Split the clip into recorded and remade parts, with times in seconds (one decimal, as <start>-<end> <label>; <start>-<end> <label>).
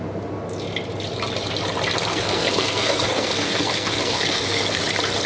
0.0-2.1 recorded; 2.1-4.8 remade; 4.8-5.3 recorded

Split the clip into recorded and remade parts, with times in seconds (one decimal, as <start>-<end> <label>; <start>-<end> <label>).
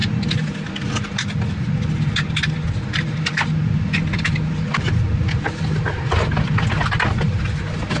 0.0-8.0 recorded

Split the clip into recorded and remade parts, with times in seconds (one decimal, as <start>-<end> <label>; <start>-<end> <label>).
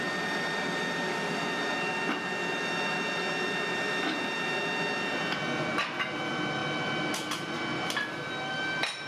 0.0-9.1 recorded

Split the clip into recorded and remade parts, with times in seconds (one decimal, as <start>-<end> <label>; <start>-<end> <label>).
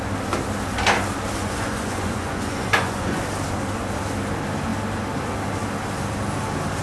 0.0-1.4 recorded; 1.4-3.2 remade; 3.2-6.8 recorded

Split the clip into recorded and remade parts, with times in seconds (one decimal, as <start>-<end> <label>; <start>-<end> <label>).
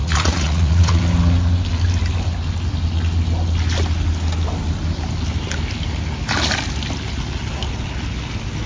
0.0-1.0 remade; 1.0-8.7 recorded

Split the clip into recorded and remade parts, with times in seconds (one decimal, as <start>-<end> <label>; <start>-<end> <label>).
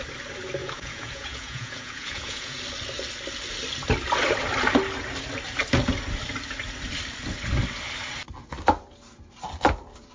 0.0-0.6 recorded; 0.6-2.6 remade; 2.6-10.1 recorded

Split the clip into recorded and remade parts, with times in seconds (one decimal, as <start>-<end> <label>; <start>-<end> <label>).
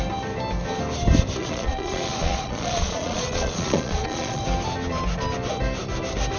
0.0-1.4 recorded; 1.4-4.4 remade; 4.4-6.4 recorded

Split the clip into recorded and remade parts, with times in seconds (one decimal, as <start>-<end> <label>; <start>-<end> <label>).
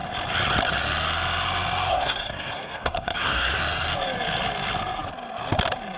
0.0-1.9 recorded; 1.9-3.6 remade; 3.6-6.0 recorded